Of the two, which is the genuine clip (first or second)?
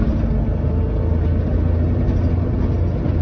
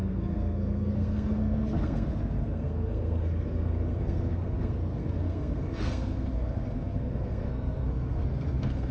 first